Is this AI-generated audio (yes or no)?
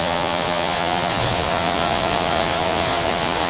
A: yes